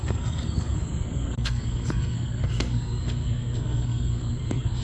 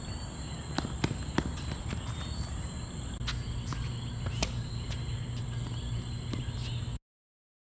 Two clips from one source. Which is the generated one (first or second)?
first